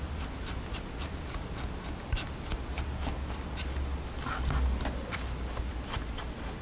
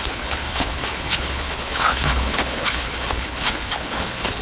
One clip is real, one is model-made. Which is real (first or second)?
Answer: first